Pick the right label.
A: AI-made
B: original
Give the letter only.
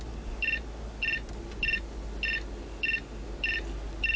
B